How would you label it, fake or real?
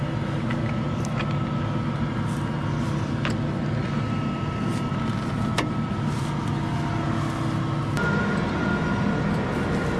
real